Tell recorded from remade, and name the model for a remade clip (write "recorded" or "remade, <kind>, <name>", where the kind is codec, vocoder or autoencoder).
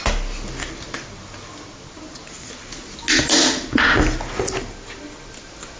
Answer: recorded